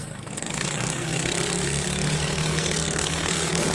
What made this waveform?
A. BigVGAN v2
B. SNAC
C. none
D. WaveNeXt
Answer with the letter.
B